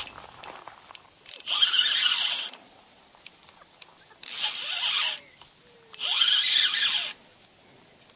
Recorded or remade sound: remade